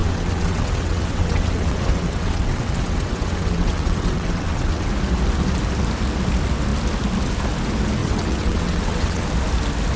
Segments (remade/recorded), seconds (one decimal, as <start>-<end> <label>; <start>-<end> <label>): 0.0-4.9 remade; 4.9-8.0 recorded; 8.0-9.2 remade; 9.2-10.0 recorded